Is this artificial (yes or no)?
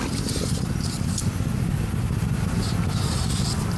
no